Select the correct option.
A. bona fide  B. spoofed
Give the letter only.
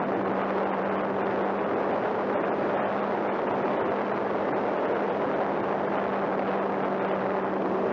A